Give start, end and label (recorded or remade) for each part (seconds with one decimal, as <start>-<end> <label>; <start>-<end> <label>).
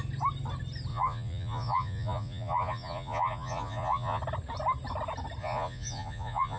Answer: 0.0-0.9 recorded; 0.9-4.2 remade; 4.2-5.4 recorded; 5.4-6.6 remade